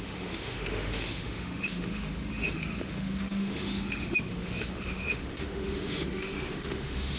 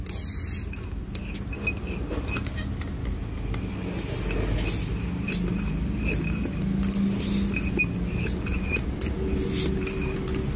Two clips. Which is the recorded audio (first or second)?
second